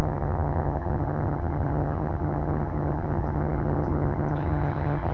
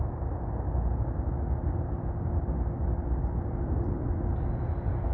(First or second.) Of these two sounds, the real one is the second